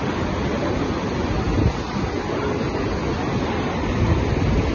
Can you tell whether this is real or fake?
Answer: real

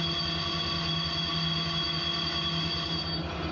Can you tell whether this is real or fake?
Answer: real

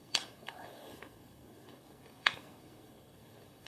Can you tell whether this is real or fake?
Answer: fake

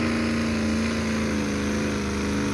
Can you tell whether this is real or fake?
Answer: real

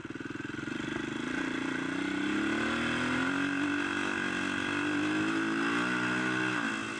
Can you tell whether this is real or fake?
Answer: real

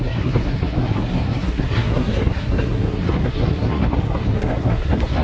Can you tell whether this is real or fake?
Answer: fake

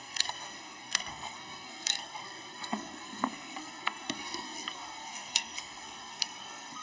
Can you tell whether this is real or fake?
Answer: fake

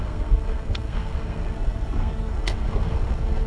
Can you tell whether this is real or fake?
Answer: fake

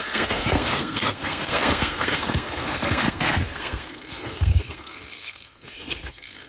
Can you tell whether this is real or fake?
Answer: fake